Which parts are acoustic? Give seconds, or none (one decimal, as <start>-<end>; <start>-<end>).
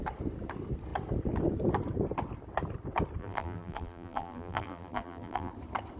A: 0.0-3.2; 5.5-6.0